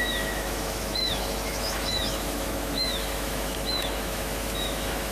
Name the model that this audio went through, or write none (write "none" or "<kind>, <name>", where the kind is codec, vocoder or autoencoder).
autoencoder, DAC-VAE